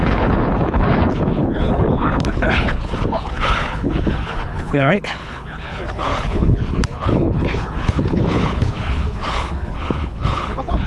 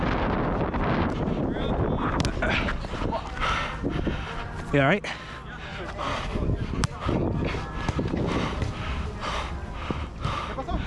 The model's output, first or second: first